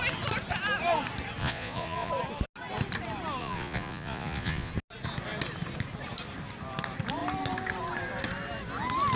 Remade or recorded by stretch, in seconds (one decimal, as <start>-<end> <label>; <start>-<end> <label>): 0.0-1.4 recorded; 1.4-2.1 remade; 2.1-3.4 recorded; 3.4-4.7 remade; 4.7-9.2 recorded